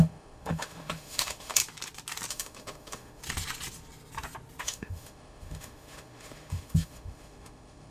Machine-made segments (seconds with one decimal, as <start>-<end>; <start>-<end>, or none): 0.0-1.6; 2.3-3.2; 4.6-7.9